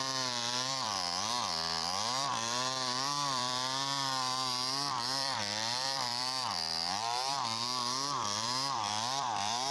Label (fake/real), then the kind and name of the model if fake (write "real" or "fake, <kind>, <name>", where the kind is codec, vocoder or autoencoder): fake, vocoder, BigVGAN v2